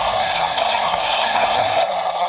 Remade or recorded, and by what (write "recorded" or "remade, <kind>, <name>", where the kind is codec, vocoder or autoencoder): remade, codec, SNAC